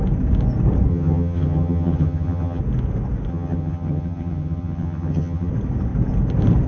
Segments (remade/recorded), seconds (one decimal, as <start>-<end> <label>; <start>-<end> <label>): 0.0-0.9 recorded; 0.9-2.6 remade; 2.6-3.3 recorded; 3.3-5.5 remade; 5.5-6.7 recorded

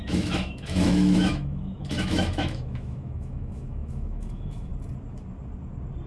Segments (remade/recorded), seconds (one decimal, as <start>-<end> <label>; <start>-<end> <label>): 0.0-4.7 remade; 4.7-6.1 recorded

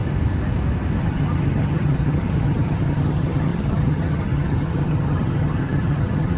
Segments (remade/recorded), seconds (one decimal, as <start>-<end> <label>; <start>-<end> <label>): 0.0-1.0 recorded; 1.0-6.4 remade

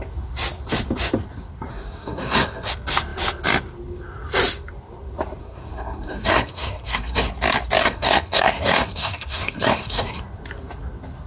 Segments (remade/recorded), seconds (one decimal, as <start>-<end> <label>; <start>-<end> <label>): 0.0-1.7 recorded; 1.7-2.7 remade; 2.7-5.4 recorded; 5.4-7.3 remade; 7.3-7.8 recorded; 7.8-10.2 remade; 10.2-11.3 recorded

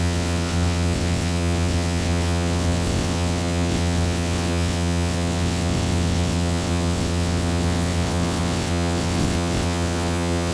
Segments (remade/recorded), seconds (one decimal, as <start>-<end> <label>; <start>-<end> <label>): 0.0-10.5 remade

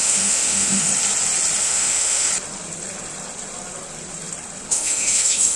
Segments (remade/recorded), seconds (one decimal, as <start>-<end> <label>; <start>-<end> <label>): 0.0-0.9 remade; 0.9-1.6 recorded; 1.6-2.3 remade; 2.3-4.7 recorded; 4.7-5.6 remade

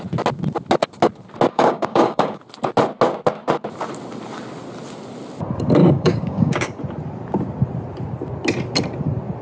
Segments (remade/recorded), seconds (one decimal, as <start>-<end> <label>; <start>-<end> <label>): 0.0-1.5 recorded; 1.5-2.4 remade; 2.4-5.8 recorded; 5.8-6.8 remade; 6.8-9.4 recorded

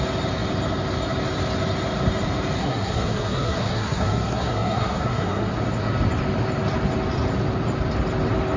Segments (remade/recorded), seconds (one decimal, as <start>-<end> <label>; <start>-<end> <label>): 0.0-2.6 recorded; 2.6-5.5 remade; 5.5-8.6 recorded